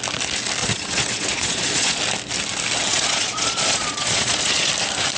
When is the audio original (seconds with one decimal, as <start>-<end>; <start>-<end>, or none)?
0.0-0.6; 2.0-2.9; 4.7-5.2